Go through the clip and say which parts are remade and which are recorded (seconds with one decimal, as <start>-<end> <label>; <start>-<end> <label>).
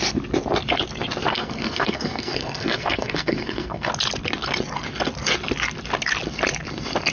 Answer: 0.0-1.3 recorded; 1.3-3.9 remade; 3.9-7.1 recorded